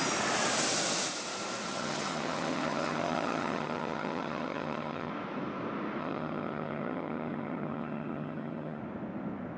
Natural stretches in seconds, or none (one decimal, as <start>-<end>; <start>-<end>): 0.0-1.7; 5.1-6.0; 8.8-9.6